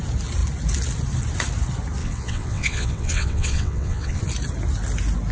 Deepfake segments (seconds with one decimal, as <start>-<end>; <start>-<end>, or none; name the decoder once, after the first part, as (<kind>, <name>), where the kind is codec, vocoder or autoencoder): 2.0-4.2 (vocoder, WaveNeXt)